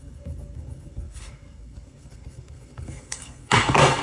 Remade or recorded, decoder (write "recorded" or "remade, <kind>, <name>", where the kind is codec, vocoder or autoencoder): remade, codec, SNAC